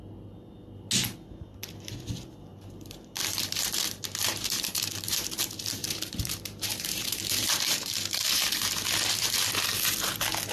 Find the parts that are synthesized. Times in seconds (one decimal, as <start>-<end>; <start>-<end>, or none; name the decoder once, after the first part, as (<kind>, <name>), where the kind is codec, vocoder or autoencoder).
2.5-5.3 (vocoder, BigVGAN v2); 5.8-8.4